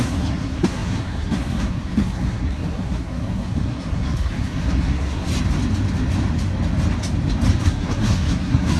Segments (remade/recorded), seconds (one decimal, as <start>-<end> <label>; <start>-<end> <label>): 0.0-5.3 remade; 5.3-7.6 recorded; 7.6-8.8 remade